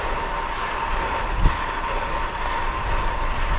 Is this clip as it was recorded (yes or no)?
yes